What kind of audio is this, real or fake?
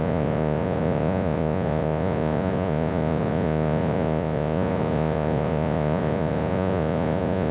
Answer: fake